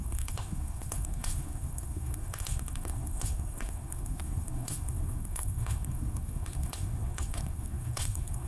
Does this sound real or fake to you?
fake